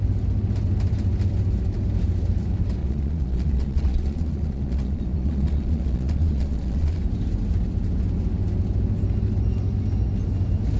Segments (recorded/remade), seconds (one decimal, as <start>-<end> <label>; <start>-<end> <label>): 0.0-2.8 recorded; 2.8-7.0 remade; 7.0-10.8 recorded